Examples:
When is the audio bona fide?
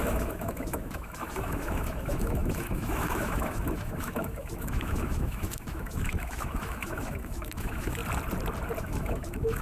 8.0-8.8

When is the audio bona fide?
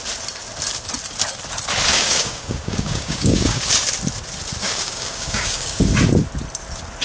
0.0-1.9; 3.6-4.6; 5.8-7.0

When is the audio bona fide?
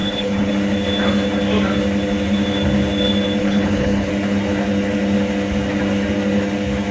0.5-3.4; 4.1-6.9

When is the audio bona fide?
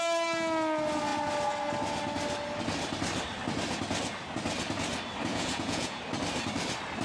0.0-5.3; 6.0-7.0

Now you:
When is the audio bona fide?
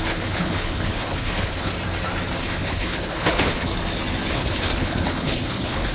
1.7-2.4; 3.7-4.3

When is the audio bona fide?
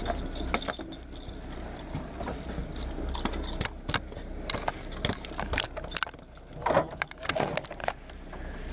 0.0-8.7